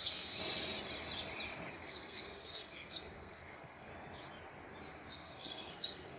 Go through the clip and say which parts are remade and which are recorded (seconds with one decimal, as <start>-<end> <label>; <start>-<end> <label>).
0.0-0.4 remade; 0.4-1.7 recorded; 1.7-3.9 remade; 3.9-5.1 recorded; 5.1-6.2 remade